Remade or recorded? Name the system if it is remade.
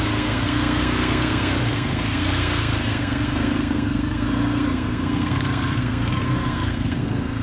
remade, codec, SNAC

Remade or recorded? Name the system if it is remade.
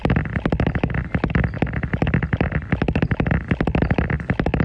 recorded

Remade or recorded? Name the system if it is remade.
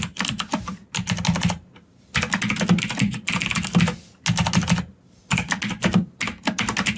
recorded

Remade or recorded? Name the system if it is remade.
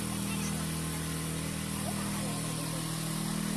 recorded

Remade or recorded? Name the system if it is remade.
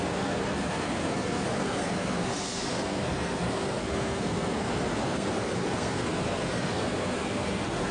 remade, codec, SNAC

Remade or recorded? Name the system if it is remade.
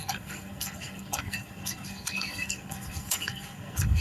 remade, codec, SNAC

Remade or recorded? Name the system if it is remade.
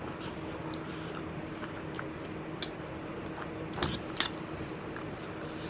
recorded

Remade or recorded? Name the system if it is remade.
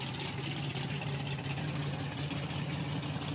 recorded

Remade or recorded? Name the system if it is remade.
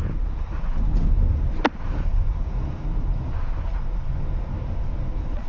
recorded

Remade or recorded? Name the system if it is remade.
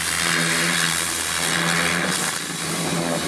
recorded